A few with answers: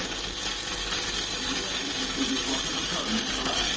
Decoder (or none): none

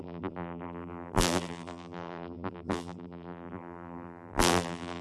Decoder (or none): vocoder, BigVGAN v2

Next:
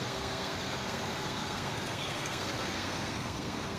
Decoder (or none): codec, SNAC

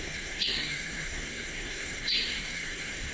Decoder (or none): codec, SNAC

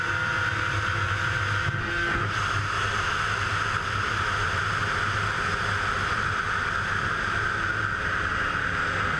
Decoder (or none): none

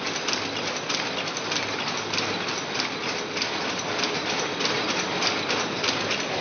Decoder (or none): none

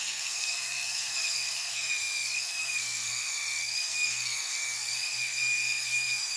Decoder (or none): codec, SNAC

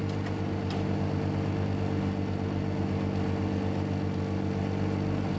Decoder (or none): none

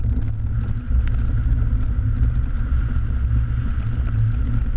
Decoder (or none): none